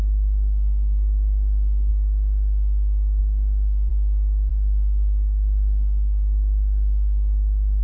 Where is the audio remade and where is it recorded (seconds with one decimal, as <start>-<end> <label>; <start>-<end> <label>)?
0.0-1.9 remade; 1.9-3.2 recorded; 3.2-3.9 remade; 3.9-4.5 recorded; 4.5-7.8 remade

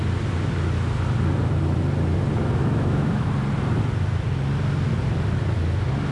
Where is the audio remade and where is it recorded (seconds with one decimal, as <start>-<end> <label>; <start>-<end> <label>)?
0.0-2.6 recorded; 2.6-3.3 remade; 3.3-6.1 recorded

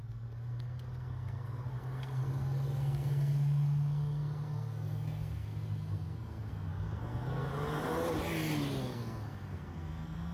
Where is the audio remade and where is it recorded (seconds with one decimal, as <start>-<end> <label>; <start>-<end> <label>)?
0.0-7.5 remade; 7.5-8.8 recorded; 8.8-10.3 remade